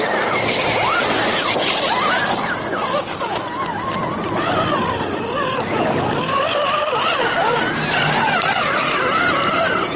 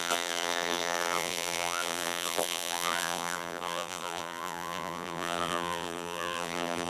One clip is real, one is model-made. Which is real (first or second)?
first